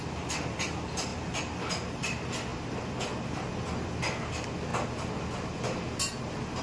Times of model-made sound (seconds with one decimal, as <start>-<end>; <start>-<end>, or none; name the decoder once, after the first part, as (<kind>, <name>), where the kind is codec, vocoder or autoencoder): none